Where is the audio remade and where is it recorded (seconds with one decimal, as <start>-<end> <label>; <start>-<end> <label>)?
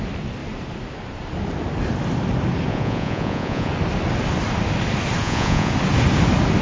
0.0-2.7 recorded; 2.7-3.7 remade; 3.7-5.2 recorded; 5.2-5.7 remade; 5.7-6.6 recorded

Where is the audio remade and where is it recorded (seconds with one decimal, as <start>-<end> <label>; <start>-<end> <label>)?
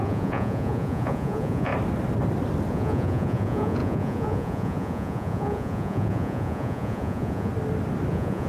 0.0-1.7 remade; 1.7-2.7 recorded; 2.7-7.5 remade; 7.5-8.1 recorded; 8.1-8.5 remade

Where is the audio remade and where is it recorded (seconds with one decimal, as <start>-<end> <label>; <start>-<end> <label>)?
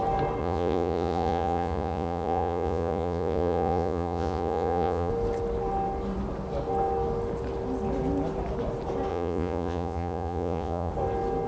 0.0-0.4 recorded; 0.4-5.1 remade; 5.1-9.1 recorded; 9.1-10.9 remade; 10.9-11.5 recorded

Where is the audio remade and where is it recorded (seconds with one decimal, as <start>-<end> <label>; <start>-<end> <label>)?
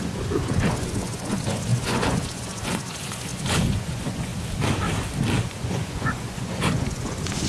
0.0-4.3 remade; 4.3-5.4 recorded; 5.4-7.5 remade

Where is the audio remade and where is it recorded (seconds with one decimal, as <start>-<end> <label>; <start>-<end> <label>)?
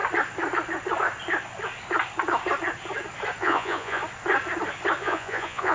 0.0-3.4 recorded; 3.4-4.0 remade; 4.0-5.0 recorded; 5.0-5.7 remade